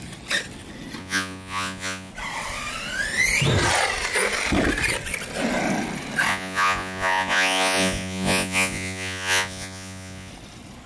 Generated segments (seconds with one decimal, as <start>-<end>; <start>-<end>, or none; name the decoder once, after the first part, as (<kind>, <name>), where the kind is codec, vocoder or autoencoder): 1.0-2.1 (vocoder, Vocos); 6.3-10.3